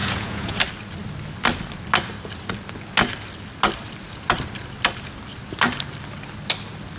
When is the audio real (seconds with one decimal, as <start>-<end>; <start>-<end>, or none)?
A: 0.6-7.0

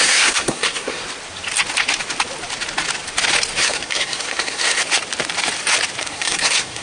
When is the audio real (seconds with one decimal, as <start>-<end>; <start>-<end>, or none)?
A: 1.0-3.6; 4.8-6.0

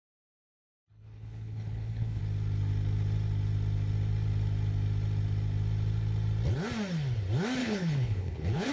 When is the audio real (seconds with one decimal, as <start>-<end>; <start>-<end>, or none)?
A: 2.2-7.6

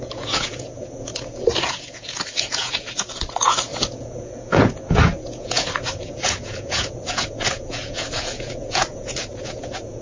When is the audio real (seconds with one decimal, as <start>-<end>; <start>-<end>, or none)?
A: none